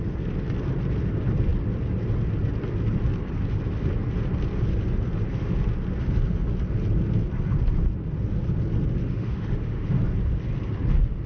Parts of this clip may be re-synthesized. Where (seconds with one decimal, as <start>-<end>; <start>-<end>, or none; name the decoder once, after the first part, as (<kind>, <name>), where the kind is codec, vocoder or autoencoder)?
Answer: 9.0-9.9 (autoencoder, DAC-VAE)